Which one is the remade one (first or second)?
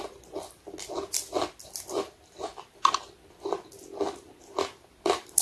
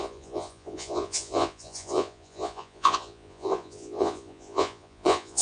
second